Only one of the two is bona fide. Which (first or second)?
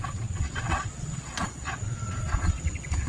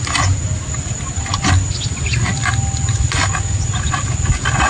second